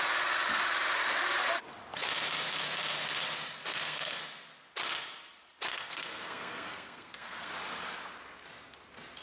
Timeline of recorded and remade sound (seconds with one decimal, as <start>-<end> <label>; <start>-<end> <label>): 0.0-3.7 recorded; 3.7-4.2 remade; 4.2-5.7 recorded; 5.7-7.5 remade; 7.5-9.2 recorded